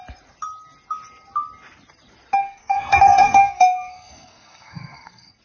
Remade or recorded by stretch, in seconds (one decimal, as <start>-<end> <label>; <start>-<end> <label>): 0.0-2.4 recorded; 2.4-5.4 remade